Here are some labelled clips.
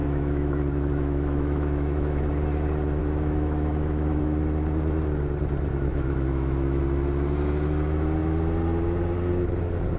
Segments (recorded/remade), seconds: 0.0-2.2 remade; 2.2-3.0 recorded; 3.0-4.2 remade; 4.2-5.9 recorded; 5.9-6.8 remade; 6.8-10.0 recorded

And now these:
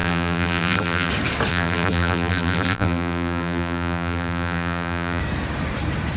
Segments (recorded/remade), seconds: 0.0-1.1 remade; 1.1-1.5 recorded; 1.5-5.2 remade; 5.2-6.2 recorded

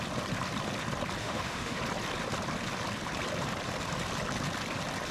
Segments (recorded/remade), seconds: 0.0-1.2 recorded; 1.2-1.8 remade; 1.8-5.1 recorded

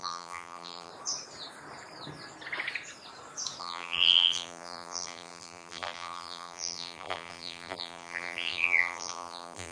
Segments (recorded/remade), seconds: 0.0-0.9 remade; 0.9-3.6 recorded; 3.6-9.7 remade

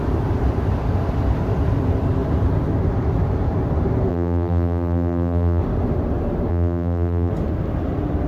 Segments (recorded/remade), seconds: 0.0-4.1 recorded; 4.1-5.6 remade; 5.6-6.5 recorded; 6.5-7.3 remade; 7.3-8.3 recorded

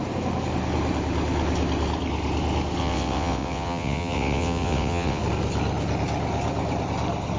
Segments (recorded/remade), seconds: 0.0-2.8 recorded; 2.8-5.2 remade; 5.2-7.4 recorded